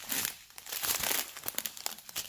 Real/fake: real